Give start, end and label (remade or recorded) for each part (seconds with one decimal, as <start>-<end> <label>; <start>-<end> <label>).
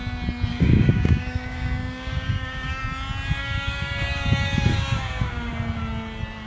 0.0-0.5 recorded; 0.5-2.8 remade; 2.8-3.4 recorded; 3.4-5.5 remade; 5.5-6.5 recorded